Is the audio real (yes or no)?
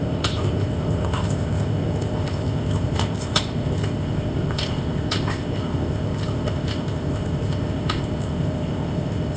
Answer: no